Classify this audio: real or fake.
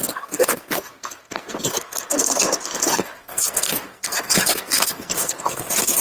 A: fake